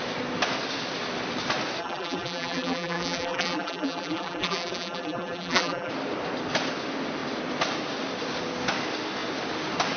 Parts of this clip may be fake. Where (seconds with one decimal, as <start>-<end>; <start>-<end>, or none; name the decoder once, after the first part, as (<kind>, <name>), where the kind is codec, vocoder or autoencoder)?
1.8-5.9 (vocoder, BigVGAN v2)